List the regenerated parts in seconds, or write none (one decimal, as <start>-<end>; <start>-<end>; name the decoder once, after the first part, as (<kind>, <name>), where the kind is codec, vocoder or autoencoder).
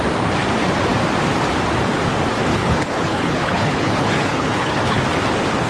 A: 2.5-5.0 (codec, HILCodec)